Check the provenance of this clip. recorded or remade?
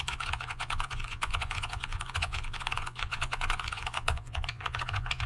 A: remade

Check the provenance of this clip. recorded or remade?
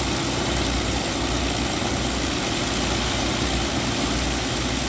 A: recorded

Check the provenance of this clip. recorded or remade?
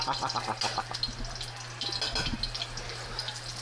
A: recorded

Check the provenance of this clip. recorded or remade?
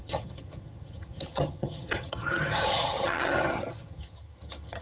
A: remade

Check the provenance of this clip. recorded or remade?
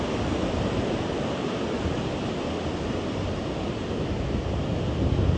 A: recorded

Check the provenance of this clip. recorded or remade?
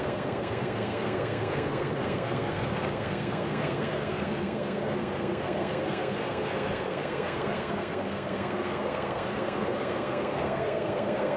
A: remade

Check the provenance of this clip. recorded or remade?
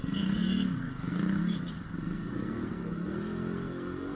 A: remade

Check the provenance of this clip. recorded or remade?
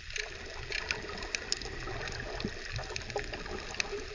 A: recorded